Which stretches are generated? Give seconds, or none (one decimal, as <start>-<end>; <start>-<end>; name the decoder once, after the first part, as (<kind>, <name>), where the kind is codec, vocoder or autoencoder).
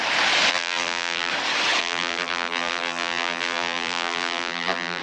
0.5-1.3 (vocoder, BigVGAN v2); 1.8-5.0